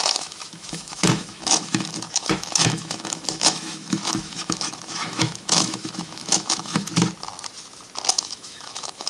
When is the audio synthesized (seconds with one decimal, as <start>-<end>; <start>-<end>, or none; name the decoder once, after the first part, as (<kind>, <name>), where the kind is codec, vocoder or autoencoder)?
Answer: 0.0-6.9 (autoencoder, DAC-VAE); 8.1-9.1